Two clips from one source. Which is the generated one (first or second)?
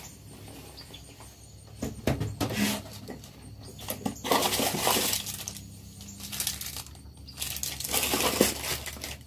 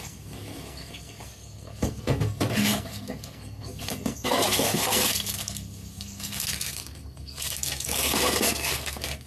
second